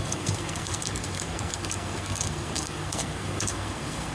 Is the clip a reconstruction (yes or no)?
yes